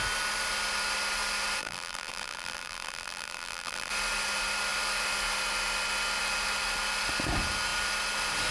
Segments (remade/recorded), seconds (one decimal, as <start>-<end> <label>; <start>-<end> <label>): 0.0-1.6 recorded; 1.6-3.9 remade; 3.9-8.5 recorded